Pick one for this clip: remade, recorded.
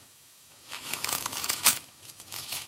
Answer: remade